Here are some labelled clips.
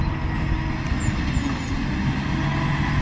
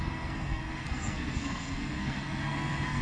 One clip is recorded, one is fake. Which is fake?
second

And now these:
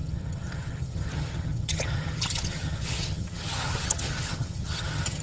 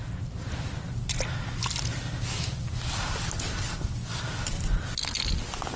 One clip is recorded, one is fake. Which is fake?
first